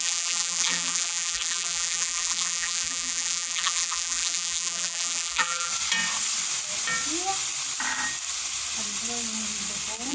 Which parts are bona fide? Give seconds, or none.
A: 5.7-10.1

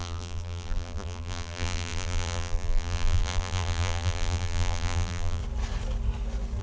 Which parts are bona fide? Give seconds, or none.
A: 5.4-6.6

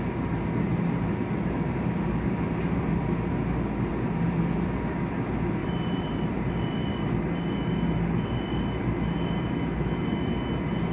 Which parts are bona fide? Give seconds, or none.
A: 0.0-3.9; 4.4-5.6; 6.5-10.9